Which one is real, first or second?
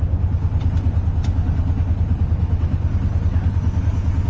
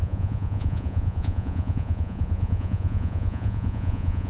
first